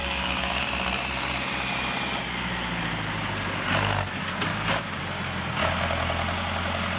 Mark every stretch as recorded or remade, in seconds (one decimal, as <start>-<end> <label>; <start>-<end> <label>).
0.0-0.6 remade; 0.6-4.5 recorded; 4.5-5.0 remade; 5.0-7.0 recorded